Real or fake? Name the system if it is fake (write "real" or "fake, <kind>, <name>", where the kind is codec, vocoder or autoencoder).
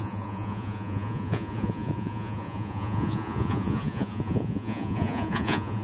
fake, vocoder, Vocos